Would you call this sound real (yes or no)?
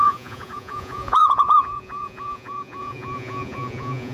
no